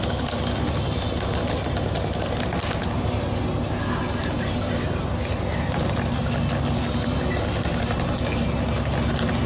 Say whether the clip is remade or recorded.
recorded